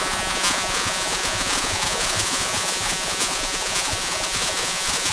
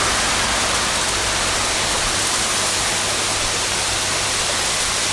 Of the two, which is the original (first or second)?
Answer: second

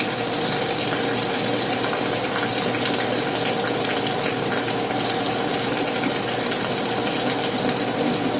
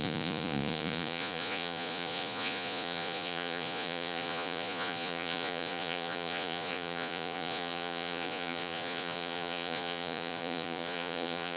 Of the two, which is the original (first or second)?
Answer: first